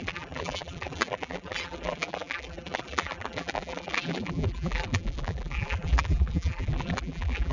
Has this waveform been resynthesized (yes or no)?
yes